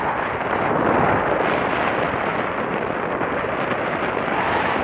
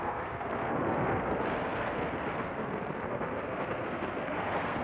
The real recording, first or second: first